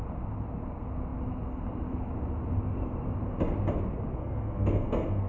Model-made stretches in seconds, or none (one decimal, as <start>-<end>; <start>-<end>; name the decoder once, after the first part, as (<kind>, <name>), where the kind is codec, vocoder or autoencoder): 4.2-5.3 (codec, SNAC)